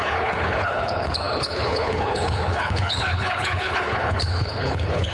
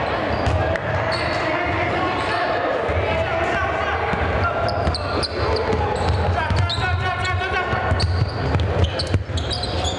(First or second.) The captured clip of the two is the second